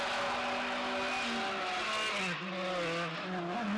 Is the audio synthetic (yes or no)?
no